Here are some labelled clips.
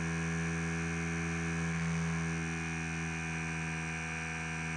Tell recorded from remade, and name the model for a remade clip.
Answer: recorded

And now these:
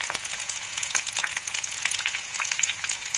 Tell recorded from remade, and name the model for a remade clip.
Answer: remade, vocoder, Vocos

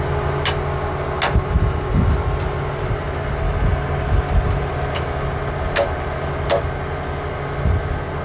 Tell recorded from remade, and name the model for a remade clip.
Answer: recorded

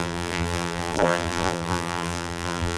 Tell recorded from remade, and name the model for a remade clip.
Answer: remade, vocoder, BigVGAN v2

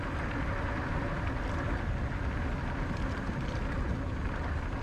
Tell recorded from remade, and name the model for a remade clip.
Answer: recorded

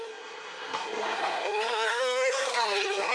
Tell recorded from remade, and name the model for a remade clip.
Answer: remade, codec, SNAC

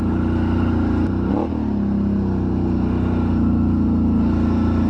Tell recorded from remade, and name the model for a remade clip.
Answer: recorded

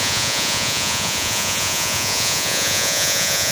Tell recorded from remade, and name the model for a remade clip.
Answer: remade, vocoder, Vocos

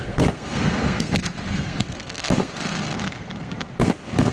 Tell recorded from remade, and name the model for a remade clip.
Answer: remade, codec, SNAC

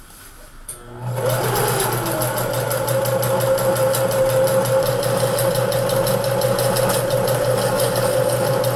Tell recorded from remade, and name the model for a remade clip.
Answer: recorded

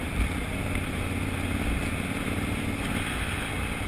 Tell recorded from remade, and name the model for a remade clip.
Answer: recorded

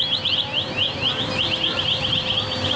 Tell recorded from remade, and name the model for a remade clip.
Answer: recorded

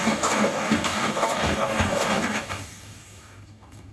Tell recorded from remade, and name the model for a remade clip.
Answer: remade, codec, DAC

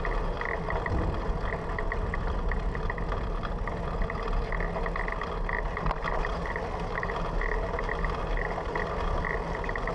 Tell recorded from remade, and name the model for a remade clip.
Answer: recorded